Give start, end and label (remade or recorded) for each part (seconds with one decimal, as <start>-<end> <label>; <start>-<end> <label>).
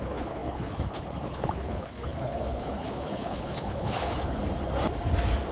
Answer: 0.0-4.4 remade; 4.4-5.5 recorded